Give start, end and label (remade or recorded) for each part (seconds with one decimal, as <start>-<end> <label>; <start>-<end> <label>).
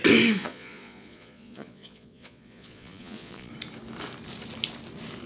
0.0-0.4 recorded; 0.4-3.5 remade; 3.5-5.3 recorded